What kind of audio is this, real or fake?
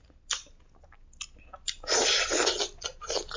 real